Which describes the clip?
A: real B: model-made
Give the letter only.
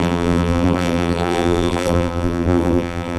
B